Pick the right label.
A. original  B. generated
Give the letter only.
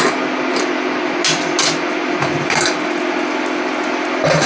A